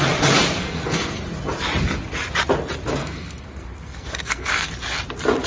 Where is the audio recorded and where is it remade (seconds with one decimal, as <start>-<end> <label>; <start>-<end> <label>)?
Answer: 0.0-0.6 recorded; 0.6-1.2 remade; 1.2-3.0 recorded; 3.0-4.7 remade; 4.7-5.5 recorded